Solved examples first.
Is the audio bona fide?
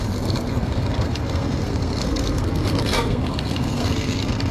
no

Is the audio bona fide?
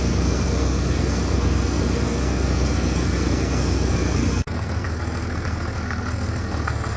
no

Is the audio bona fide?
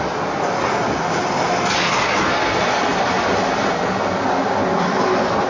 yes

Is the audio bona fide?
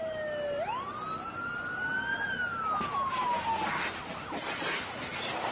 yes